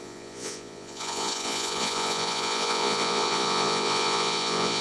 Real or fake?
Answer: fake